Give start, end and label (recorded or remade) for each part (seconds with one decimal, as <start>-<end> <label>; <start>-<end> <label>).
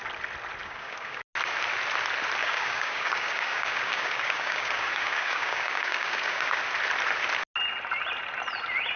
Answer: 0.0-0.6 recorded; 0.6-1.2 remade; 1.2-2.4 recorded; 2.4-6.6 remade; 6.6-9.0 recorded